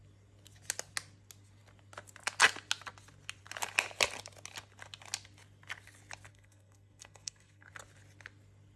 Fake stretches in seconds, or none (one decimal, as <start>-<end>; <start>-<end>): 6.3-7.7